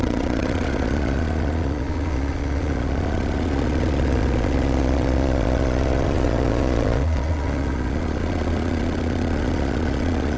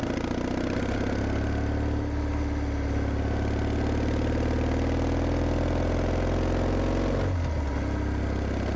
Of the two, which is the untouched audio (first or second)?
second